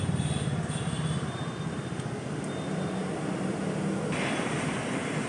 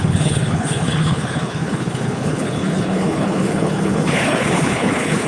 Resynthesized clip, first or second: second